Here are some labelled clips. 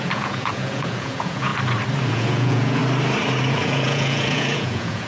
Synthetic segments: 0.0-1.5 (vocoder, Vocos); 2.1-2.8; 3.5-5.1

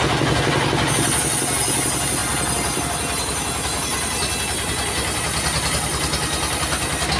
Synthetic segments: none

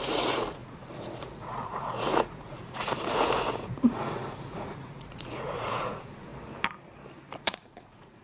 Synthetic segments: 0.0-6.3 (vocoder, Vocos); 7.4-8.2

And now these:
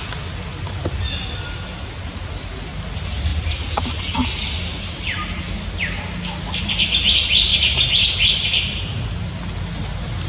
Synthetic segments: none

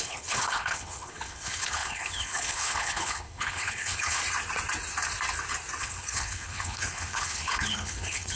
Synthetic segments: 0.0-4.2 (codec, HILCodec); 5.8-8.4

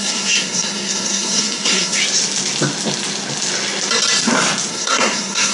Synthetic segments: 0.0-2.0 (codec, SNAC); 4.7-5.5

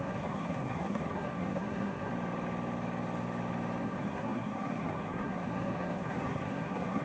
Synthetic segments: 0.0-2.1 (codec, SNAC); 3.8-7.0

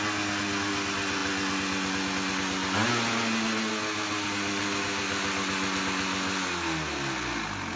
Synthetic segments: none